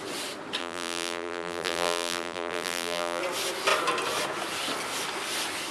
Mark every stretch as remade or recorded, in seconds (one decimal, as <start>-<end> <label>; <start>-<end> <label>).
0.0-0.6 recorded; 0.6-3.2 remade; 3.2-5.7 recorded